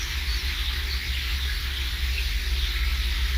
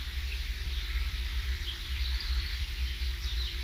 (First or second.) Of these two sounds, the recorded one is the first